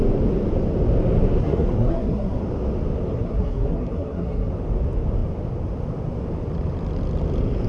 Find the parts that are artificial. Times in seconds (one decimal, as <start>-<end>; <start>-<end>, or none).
1.4-2.4; 3.1-4.5